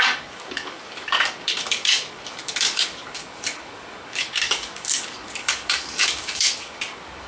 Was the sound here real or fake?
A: fake